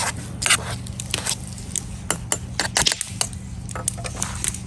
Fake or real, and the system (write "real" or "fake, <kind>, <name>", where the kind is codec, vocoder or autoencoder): real